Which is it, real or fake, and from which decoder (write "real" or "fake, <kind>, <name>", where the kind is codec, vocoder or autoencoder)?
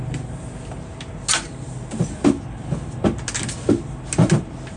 real